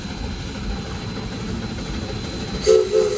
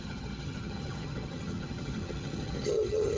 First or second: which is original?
first